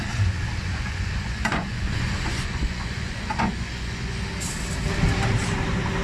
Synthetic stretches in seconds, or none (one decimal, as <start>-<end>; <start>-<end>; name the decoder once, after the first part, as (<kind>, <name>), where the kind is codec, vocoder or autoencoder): 0.6-4.2 (vocoder, Vocos)